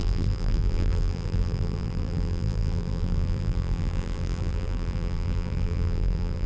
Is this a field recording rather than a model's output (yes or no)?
no